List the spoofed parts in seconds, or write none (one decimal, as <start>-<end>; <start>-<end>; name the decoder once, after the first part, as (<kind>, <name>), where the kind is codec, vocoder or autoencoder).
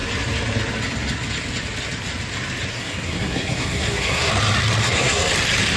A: 2.7-4.3 (codec, SNAC); 4.8-5.3